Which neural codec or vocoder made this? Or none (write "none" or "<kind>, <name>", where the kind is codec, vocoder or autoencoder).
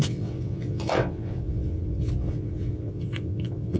vocoder, WaveNeXt